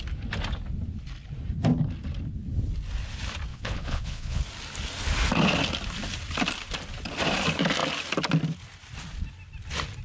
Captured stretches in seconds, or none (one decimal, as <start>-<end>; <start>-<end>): 0.0-3.5; 4.4-10.0